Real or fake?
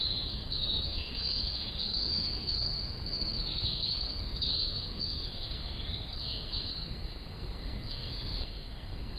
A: fake